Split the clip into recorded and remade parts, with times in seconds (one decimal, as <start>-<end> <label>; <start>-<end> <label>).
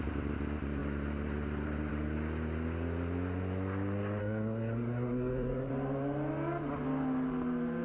0.0-4.2 recorded; 4.2-5.7 remade; 5.7-7.8 recorded